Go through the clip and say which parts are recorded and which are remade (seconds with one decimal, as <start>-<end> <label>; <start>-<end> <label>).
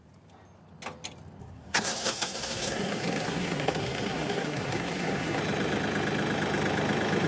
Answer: 0.0-1.4 recorded; 1.4-5.4 remade; 5.4-7.3 recorded